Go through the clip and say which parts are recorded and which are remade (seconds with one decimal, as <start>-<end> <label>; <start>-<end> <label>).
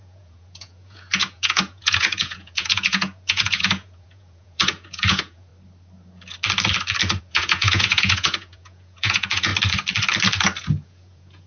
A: 0.0-5.5 remade; 5.5-7.2 recorded; 7.2-9.5 remade; 9.5-10.6 recorded; 10.6-11.5 remade